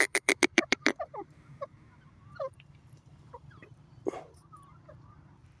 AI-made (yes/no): yes